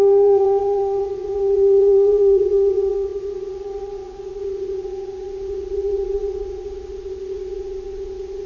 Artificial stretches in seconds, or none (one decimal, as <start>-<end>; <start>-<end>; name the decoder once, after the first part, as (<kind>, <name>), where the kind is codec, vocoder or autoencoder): 0.0-8.5 (vocoder, Vocos)